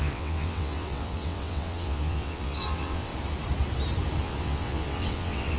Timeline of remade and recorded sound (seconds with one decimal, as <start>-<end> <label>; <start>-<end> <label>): 0.0-3.1 remade; 3.1-4.2 recorded; 4.2-5.6 remade